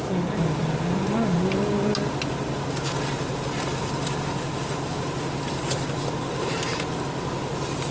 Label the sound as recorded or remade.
recorded